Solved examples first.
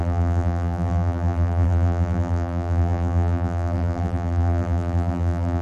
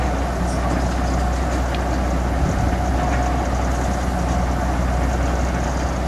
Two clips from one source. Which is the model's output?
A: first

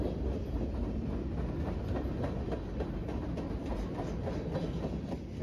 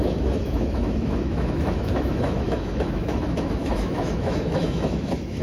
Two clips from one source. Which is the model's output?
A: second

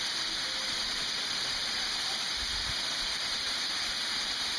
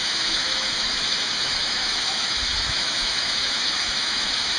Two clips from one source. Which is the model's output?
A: second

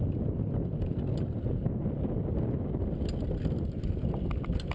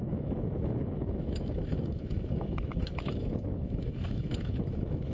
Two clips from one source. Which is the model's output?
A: second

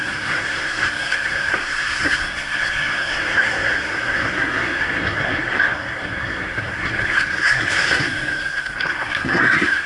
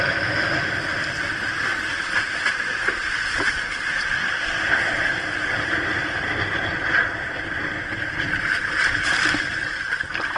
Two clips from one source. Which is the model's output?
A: first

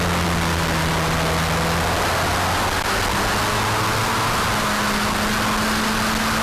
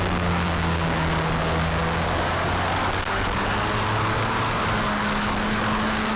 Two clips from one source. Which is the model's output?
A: second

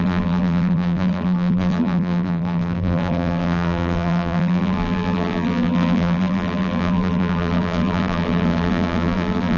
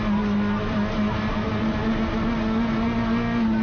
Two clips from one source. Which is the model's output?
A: first